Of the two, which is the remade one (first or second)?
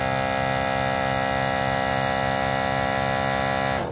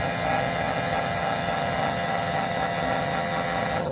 second